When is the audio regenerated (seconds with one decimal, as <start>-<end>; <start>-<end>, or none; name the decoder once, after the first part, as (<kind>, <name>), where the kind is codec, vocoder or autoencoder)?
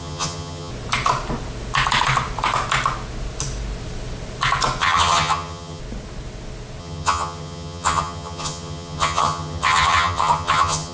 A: 0.0-0.7 (vocoder, HiFi-GAN); 4.8-5.8; 6.8-10.9